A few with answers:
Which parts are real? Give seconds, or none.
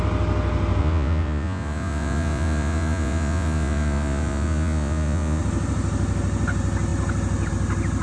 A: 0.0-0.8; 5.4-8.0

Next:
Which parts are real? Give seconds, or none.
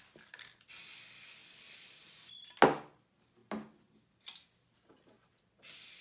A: 0.0-6.0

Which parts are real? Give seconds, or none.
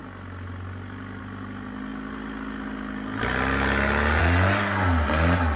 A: 0.0-5.6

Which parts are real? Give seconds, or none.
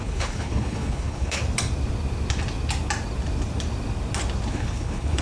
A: 1.4-4.5